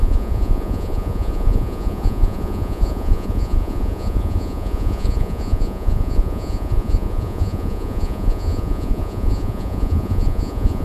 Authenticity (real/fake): fake